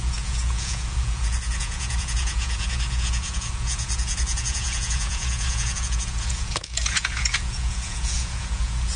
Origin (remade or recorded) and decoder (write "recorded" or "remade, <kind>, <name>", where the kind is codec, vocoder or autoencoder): remade, vocoder, Vocos